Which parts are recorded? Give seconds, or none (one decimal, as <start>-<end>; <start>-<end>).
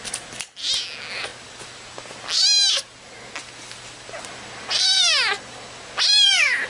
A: 0.0-6.7